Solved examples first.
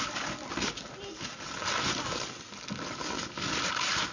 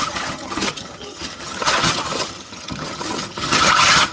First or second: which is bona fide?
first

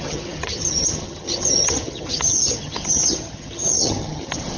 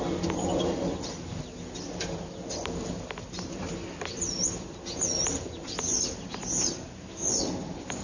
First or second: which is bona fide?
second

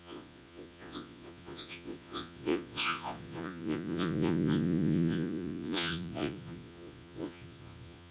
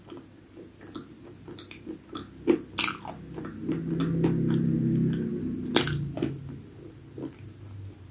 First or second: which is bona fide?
second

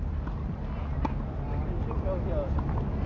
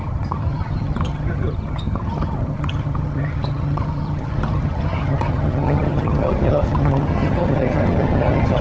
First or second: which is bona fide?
first